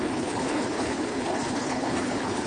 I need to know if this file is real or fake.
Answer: fake